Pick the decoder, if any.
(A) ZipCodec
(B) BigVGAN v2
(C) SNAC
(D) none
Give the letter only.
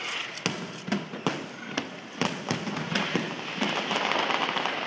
D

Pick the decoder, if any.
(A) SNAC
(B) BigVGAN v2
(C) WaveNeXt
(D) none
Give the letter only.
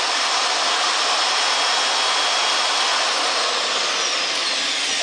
D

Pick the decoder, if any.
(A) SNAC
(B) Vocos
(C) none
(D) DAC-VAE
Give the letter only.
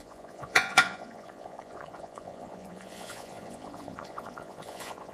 B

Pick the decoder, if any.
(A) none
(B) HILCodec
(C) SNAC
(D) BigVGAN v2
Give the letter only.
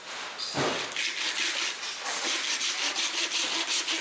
A